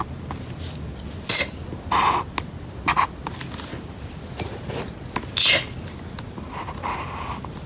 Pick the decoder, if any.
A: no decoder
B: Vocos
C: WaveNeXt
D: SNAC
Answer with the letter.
A